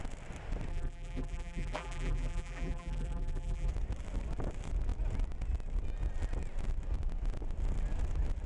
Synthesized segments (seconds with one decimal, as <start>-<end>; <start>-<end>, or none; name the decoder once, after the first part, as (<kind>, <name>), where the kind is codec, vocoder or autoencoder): 0.7-3.7 (vocoder, BigVGAN v2)